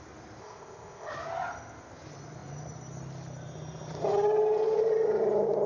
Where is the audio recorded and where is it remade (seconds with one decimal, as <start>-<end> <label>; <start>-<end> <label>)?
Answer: 0.0-0.4 recorded; 0.4-1.1 remade; 1.1-5.7 recorded